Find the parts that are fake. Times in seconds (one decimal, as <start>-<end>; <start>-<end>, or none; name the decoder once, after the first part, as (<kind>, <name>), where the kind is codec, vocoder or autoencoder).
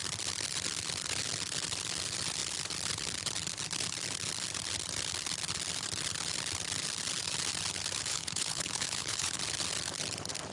8.1-9.4 (codec, HILCodec)